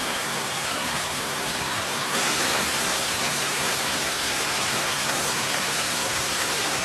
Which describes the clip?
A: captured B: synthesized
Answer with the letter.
B